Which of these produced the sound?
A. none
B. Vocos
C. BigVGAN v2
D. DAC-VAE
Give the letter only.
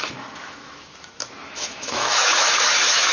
D